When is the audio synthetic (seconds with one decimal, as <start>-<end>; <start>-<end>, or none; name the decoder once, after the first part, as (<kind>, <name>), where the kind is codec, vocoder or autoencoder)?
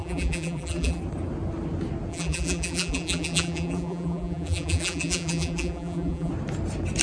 0.0-1.0 (vocoder, BigVGAN v2); 2.1-6.3